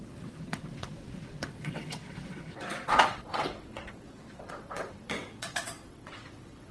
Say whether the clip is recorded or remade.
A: remade